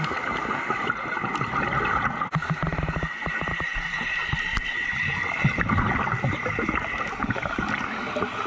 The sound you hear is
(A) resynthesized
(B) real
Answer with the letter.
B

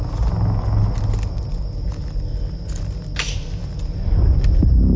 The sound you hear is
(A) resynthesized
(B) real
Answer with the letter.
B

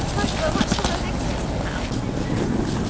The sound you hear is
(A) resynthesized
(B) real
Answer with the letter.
B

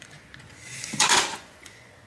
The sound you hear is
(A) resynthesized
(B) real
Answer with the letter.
A